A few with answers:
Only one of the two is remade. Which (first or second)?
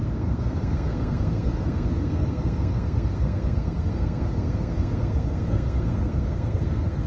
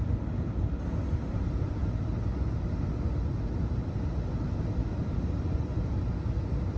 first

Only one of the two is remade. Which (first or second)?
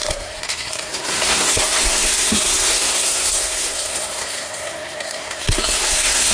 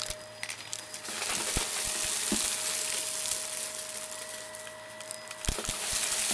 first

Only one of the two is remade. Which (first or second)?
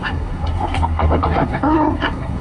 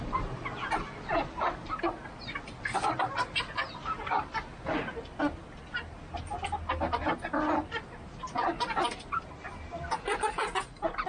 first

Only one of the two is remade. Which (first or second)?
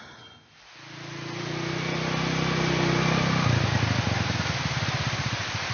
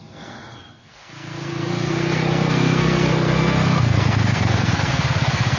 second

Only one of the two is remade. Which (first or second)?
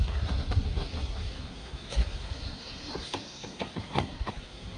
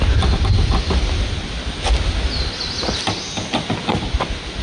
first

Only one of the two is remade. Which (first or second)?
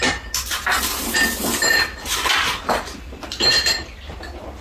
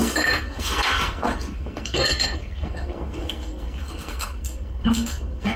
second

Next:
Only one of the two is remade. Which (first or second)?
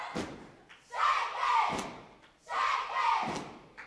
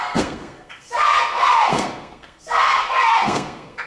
second